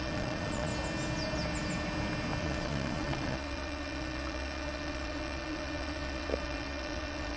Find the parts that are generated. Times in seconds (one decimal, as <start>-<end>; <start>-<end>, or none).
0.0-0.7; 2.4-7.4